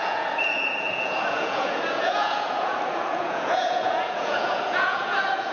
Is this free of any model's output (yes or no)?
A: no